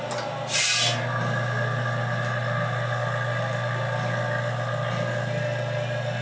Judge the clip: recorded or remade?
recorded